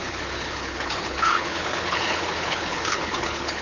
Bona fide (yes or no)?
no